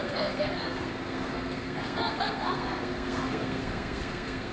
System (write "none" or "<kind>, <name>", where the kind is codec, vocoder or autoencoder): codec, SNAC